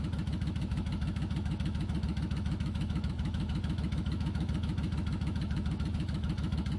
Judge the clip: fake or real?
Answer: fake